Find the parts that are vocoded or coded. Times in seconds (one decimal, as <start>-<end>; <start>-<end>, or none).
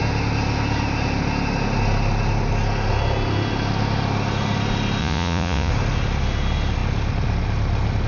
5.0-5.7